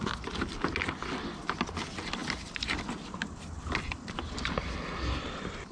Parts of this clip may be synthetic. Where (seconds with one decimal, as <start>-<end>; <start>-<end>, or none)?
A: 2.2-3.3